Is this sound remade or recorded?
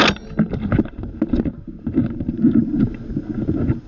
recorded